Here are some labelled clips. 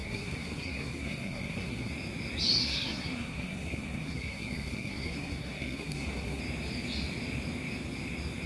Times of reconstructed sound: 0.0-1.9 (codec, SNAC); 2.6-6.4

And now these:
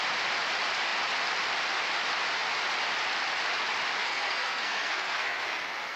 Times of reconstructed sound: 4.0-6.0 (codec, SNAC)